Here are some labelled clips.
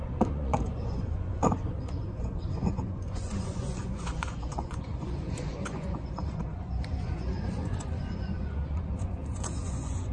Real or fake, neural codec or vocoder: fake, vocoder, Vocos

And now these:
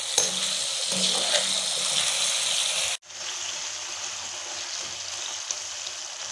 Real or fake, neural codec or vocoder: real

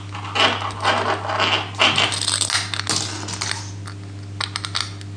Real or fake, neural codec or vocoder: real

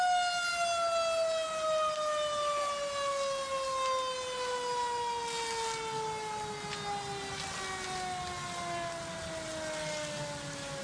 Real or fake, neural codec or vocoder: real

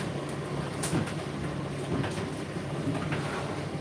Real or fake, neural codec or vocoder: real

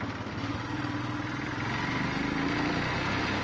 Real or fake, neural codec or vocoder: real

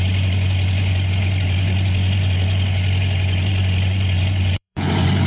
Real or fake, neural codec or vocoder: fake, vocoder, Vocos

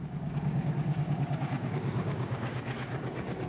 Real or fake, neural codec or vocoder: fake, codec, DAC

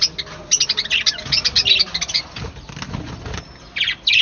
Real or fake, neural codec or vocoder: real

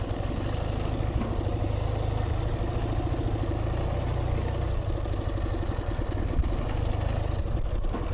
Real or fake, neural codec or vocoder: real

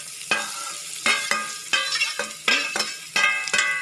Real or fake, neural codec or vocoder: real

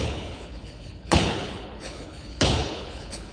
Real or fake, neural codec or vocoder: fake, codec, HILCodec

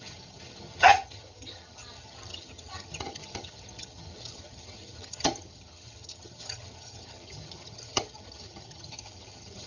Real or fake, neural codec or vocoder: fake, vocoder, HiFi-GAN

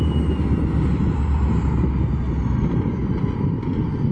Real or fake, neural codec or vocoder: real